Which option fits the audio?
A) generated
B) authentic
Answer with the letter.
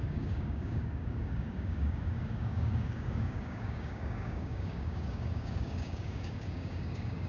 A